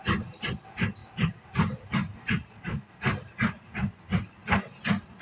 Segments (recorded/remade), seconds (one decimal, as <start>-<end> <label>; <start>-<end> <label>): 0.0-1.0 recorded; 1.0-4.0 remade; 4.0-5.2 recorded